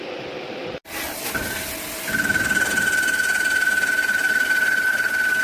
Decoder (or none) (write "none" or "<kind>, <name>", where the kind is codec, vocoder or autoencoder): none